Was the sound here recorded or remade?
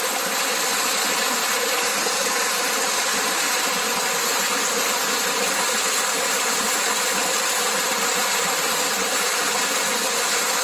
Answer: recorded